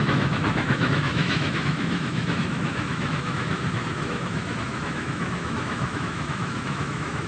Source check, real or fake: fake